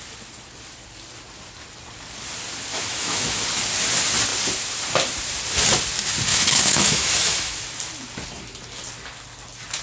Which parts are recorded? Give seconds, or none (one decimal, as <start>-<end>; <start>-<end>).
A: 0.0-2.7; 3.4-6.3; 7.6-9.8